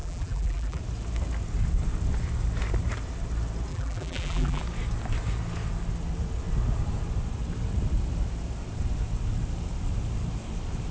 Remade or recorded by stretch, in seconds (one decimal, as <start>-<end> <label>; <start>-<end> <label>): 0.0-0.8 remade; 0.8-3.7 recorded; 3.7-4.6 remade; 4.6-10.9 recorded